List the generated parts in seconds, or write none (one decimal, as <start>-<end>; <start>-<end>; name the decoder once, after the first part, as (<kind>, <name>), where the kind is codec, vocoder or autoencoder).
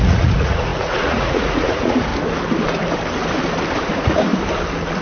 0.0-2.1 (vocoder, Vocos); 3.9-4.3